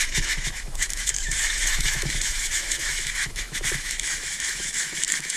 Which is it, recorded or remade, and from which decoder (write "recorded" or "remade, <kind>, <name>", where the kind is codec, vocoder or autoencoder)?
remade, autoencoder, DAC-VAE